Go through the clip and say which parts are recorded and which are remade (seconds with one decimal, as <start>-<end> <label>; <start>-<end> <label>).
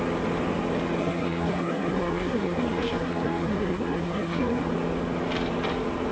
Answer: 0.0-1.0 recorded; 1.0-4.7 remade; 4.7-6.1 recorded